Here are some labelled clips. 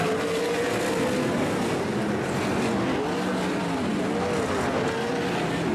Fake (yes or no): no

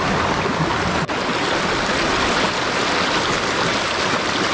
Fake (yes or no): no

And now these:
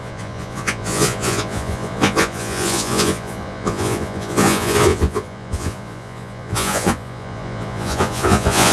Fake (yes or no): yes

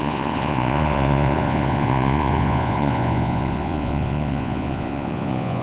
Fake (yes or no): yes